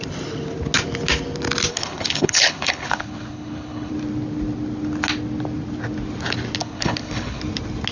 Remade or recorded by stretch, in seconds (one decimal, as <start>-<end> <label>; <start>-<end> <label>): 0.0-1.7 recorded; 1.7-3.9 remade; 3.9-6.6 recorded; 6.6-7.4 remade; 7.4-7.9 recorded